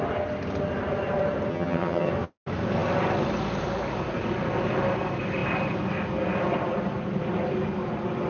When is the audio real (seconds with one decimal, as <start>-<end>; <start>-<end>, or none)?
0.0-1.5; 2.1-8.3